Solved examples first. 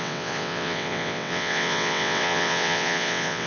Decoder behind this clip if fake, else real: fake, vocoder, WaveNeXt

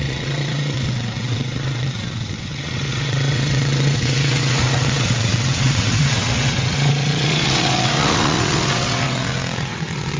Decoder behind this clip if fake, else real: fake, vocoder, WaveNeXt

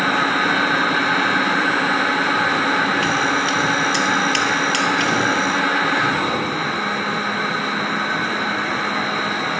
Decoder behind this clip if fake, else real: real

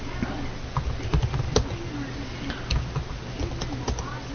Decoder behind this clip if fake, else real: real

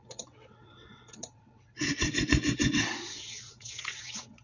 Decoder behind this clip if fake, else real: fake, vocoder, WaveNeXt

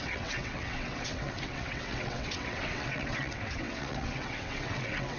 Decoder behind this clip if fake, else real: fake, vocoder, WaveNeXt